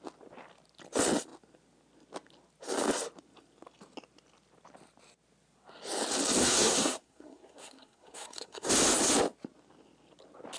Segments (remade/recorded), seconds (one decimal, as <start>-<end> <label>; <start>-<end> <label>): 0.0-6.4 recorded; 6.4-8.7 remade; 8.7-10.6 recorded